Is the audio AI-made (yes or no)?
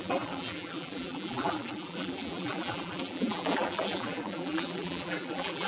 yes